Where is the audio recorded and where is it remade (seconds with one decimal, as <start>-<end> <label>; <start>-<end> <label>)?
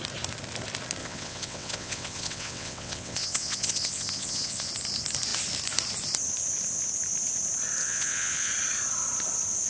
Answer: 0.0-1.0 recorded; 1.0-4.7 remade; 4.7-7.8 recorded; 7.8-8.5 remade; 8.5-9.7 recorded